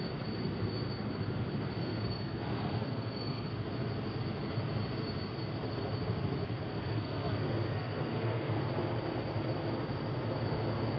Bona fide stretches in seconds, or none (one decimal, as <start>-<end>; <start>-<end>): 0.0-1.8; 3.5-6.7; 8.6-11.0